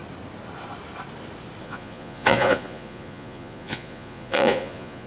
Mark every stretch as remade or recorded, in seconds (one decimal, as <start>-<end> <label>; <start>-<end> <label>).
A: 0.0-1.6 recorded; 1.6-5.1 remade